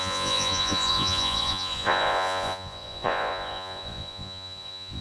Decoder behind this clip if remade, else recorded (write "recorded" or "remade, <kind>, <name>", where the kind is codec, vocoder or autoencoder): remade, vocoder, Vocos